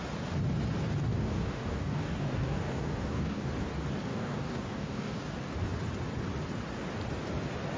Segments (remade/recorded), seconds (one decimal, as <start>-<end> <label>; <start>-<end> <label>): 0.0-1.1 recorded; 1.1-3.5 remade; 3.5-4.1 recorded; 4.1-5.3 remade; 5.3-7.8 recorded

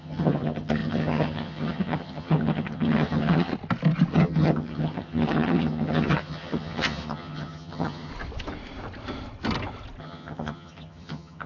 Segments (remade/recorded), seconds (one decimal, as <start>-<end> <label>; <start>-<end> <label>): 0.0-3.5 remade; 3.5-4.1 recorded; 4.1-8.1 remade; 8.1-10.0 recorded; 10.0-11.5 remade

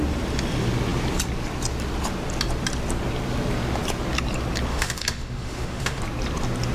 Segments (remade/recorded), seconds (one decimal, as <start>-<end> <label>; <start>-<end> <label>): 0.0-4.7 recorded; 4.7-6.0 remade; 6.0-6.7 recorded

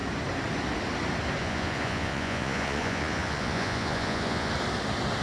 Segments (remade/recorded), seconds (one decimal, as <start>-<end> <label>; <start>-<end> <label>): 0.0-1.4 recorded; 1.4-4.5 remade; 4.5-5.2 recorded

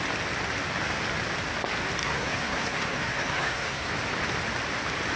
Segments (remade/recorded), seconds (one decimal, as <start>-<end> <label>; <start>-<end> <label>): 0.0-2.0 recorded; 2.0-3.9 remade; 3.9-5.2 recorded

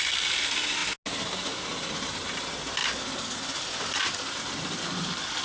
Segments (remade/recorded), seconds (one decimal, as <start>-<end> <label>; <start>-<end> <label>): 0.0-5.4 recorded

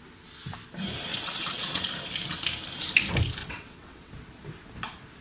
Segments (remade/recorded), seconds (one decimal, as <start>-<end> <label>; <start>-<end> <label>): 0.0-1.1 recorded; 1.1-1.8 remade; 1.8-3.4 recorded; 3.4-4.1 remade; 4.1-5.2 recorded